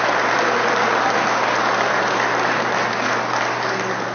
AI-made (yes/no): no